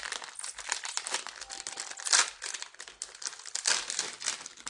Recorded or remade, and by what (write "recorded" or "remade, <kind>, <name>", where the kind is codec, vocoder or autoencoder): recorded